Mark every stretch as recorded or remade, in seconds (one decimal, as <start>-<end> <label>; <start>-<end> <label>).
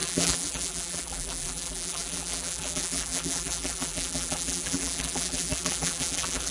0.0-6.5 remade